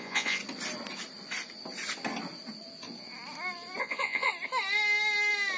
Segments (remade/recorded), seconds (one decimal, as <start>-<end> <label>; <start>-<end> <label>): 0.0-0.4 remade; 0.4-3.8 recorded; 3.8-4.3 remade; 4.3-5.6 recorded